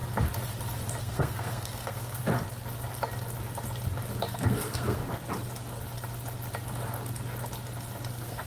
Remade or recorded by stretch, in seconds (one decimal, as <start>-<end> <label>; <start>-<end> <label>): 0.0-1.0 recorded; 1.0-2.2 remade; 2.2-4.3 recorded; 4.3-5.0 remade; 5.0-8.1 recorded; 8.1-8.5 remade